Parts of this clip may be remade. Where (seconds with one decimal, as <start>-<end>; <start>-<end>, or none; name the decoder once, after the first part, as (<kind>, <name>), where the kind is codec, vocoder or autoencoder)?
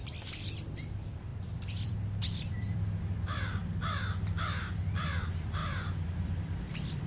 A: 0.0-3.6 (vocoder, BigVGAN v2); 4.4-5.6; 6.2-7.1